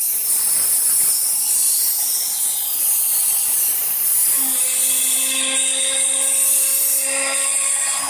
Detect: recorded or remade recorded